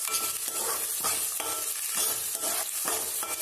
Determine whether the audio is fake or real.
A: real